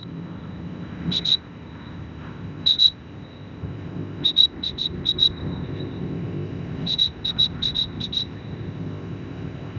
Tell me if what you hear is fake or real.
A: fake